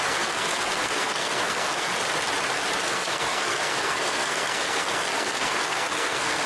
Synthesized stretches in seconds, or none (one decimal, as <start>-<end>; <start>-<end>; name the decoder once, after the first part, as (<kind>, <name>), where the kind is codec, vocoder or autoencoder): 0.0-1.9 (codec, SNAC); 2.8-6.5